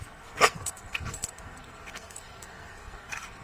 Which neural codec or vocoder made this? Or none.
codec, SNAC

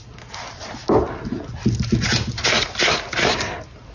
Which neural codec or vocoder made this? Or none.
none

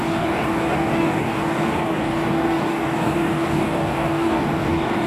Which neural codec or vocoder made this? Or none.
codec, DAC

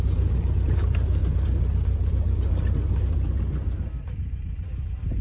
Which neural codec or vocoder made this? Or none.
none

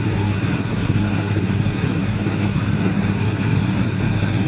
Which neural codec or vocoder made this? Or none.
codec, SNAC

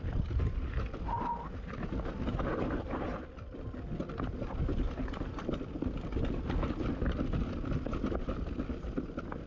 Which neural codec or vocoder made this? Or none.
none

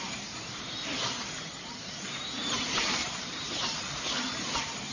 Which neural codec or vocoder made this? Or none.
vocoder, BigVGAN v2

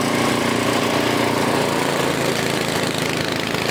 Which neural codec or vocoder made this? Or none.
none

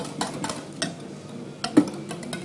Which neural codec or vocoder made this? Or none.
none